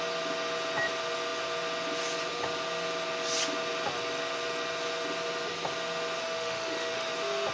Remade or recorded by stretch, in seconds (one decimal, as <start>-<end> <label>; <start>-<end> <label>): 0.0-6.2 recorded; 6.2-7.1 remade; 7.1-7.5 recorded